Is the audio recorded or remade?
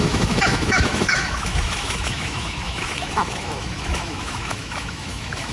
remade